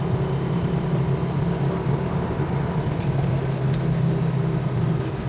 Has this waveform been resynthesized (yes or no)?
no